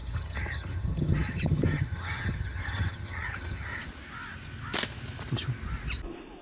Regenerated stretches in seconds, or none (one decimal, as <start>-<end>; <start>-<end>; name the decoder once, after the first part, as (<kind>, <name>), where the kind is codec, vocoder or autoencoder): 0.0-3.8 (vocoder, HiFi-GAN)